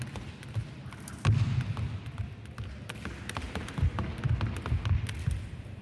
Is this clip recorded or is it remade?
recorded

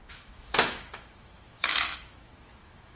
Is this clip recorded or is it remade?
remade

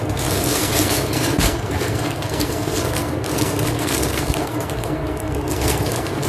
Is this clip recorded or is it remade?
remade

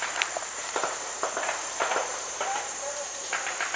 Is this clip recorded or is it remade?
remade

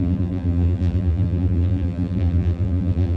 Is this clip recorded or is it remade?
remade